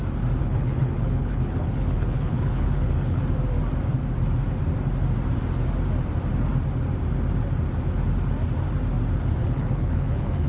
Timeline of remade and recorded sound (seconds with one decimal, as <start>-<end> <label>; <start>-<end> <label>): 0.0-0.4 recorded; 0.4-3.2 remade; 3.2-9.4 recorded; 9.4-10.5 remade